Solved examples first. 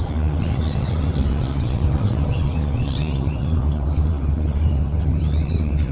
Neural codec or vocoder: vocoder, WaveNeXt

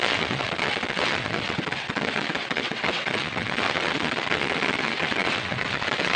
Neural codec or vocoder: vocoder, WaveNeXt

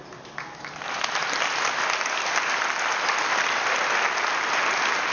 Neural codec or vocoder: none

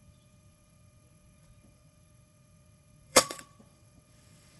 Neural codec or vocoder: vocoder, WaveNeXt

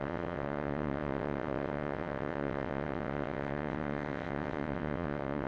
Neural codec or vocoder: vocoder, WaveNeXt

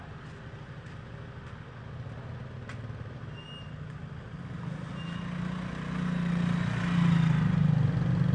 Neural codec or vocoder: none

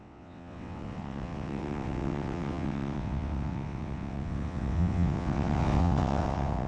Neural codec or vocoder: vocoder, WaveNeXt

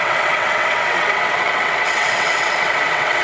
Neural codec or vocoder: vocoder, WaveNeXt